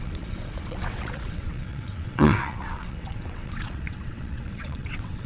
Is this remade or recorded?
remade